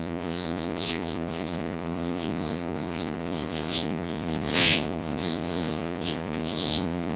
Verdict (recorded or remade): remade